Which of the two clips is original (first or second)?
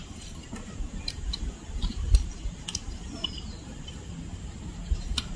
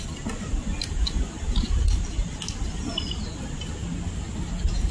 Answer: second